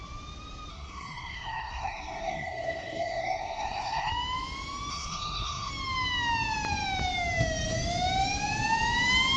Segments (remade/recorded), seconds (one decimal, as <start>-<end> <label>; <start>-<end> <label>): 0.0-0.7 recorded; 0.7-4.1 remade; 4.1-4.9 recorded; 4.9-5.7 remade; 5.7-9.4 recorded